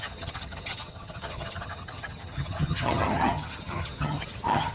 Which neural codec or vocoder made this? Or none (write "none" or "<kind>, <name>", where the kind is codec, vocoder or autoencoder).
vocoder, HiFi-GAN